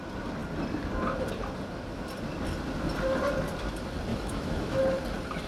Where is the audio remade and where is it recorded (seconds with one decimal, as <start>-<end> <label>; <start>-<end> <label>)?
0.0-4.1 recorded; 4.1-4.8 remade; 4.8-5.5 recorded

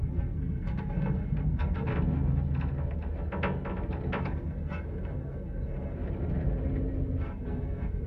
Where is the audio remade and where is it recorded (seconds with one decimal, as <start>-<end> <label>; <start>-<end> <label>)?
0.0-1.9 remade; 1.9-4.2 recorded; 4.2-6.0 remade; 6.0-7.2 recorded; 7.2-8.1 remade

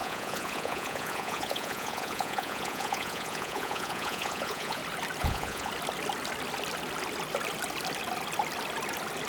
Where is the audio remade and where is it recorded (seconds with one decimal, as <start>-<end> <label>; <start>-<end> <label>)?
0.0-4.8 remade; 4.8-5.2 recorded; 5.2-5.7 remade; 5.7-9.3 recorded

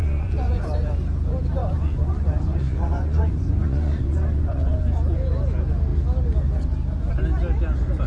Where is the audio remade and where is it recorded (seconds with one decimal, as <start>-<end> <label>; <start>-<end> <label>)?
0.0-0.6 remade; 0.6-1.6 recorded; 1.6-4.8 remade; 4.8-8.1 recorded

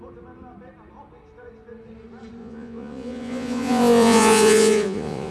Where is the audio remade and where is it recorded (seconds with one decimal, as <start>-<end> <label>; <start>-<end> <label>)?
0.0-2.4 recorded; 2.4-5.3 remade

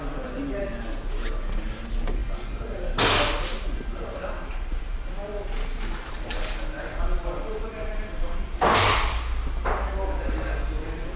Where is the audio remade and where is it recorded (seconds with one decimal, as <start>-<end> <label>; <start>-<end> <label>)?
0.0-11.2 recorded

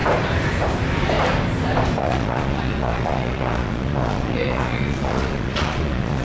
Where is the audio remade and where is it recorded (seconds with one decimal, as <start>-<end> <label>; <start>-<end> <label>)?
0.0-2.0 recorded; 2.0-6.2 remade

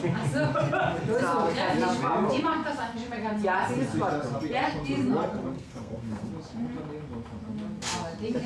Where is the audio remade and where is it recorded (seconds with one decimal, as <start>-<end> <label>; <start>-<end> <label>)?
0.0-5.5 recorded; 5.5-6.3 remade; 6.3-8.5 recorded